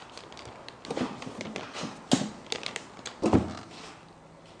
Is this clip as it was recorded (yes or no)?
yes